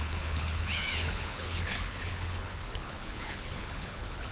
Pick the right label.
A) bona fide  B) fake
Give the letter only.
B